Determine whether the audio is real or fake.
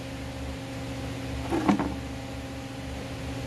real